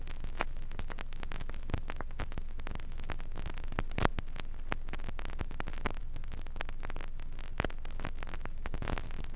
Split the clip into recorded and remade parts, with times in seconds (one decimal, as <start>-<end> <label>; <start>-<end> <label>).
0.0-9.4 recorded